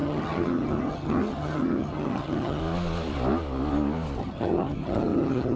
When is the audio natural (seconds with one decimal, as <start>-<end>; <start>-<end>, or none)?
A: 2.6-4.2